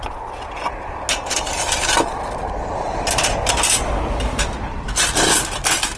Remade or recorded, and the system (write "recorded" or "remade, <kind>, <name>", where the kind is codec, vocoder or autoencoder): recorded